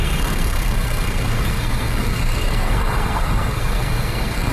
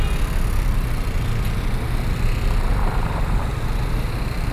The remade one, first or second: first